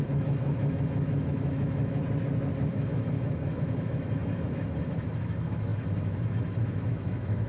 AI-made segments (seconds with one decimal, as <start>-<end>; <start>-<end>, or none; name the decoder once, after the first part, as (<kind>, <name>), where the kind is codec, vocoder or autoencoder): 0.0-2.0 (autoencoder, DAC-VAE); 2.7-7.5